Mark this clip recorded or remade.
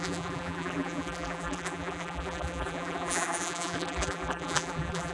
remade